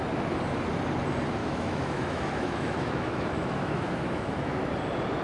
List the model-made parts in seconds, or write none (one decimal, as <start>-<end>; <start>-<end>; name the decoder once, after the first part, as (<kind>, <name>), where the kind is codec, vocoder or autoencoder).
1.4-4.5 (autoencoder, DAC-VAE)